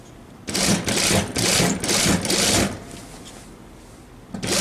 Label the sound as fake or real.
real